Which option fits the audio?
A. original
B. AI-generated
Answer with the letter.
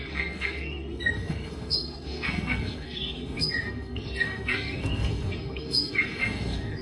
B